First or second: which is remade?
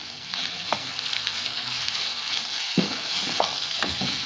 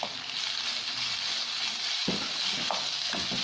first